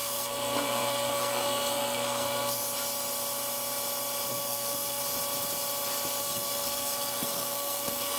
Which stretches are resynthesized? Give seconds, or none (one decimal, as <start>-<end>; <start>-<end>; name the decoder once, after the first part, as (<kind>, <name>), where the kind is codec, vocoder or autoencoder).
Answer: 0.0-2.6 (codec, SNAC); 4.3-5.0; 6.2-8.2